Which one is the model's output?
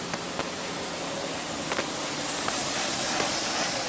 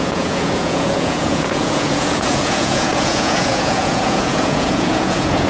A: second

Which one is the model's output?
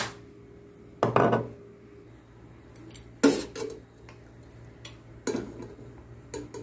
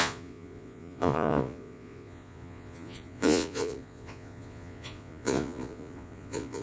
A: second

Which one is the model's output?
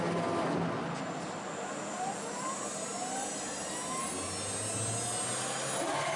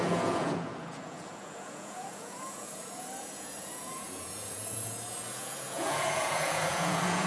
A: second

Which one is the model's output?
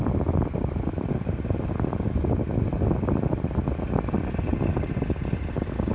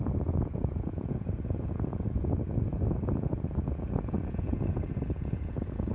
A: second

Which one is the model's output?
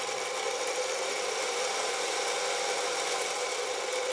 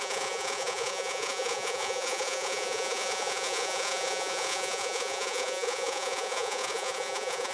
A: second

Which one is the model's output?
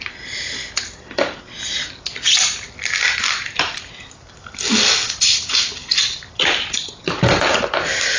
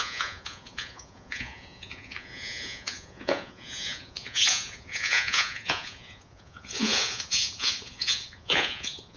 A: second